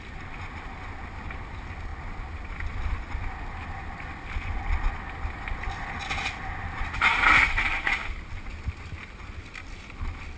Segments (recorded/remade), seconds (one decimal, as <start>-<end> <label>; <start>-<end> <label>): 0.0-10.4 recorded